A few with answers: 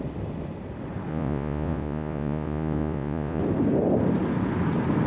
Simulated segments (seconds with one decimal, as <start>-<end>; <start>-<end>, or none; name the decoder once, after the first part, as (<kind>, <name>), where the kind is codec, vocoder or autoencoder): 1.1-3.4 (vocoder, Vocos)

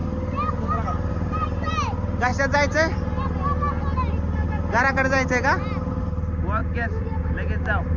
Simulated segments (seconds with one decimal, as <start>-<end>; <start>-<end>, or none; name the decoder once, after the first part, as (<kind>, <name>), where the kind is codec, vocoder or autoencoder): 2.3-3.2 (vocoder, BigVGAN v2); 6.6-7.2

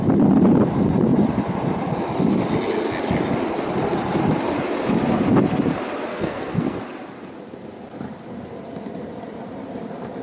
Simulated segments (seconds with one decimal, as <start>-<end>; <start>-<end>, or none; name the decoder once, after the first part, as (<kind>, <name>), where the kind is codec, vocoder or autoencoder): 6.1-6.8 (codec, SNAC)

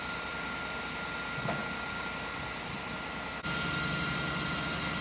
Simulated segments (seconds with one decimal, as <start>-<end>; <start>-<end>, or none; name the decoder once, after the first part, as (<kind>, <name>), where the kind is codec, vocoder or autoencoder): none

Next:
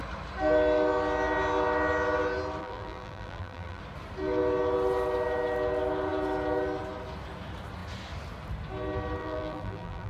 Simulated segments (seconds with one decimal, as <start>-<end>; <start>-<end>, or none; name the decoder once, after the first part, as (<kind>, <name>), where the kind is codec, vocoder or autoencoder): 2.6-3.8 (vocoder, BigVGAN v2); 9.2-10.1